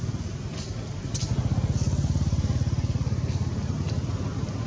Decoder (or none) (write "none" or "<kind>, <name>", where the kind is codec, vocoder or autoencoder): none